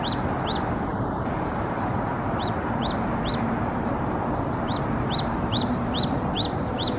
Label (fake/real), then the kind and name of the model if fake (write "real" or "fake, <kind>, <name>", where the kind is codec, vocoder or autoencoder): fake, vocoder, BigVGAN v2